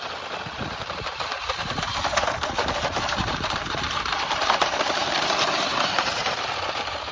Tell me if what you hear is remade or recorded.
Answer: remade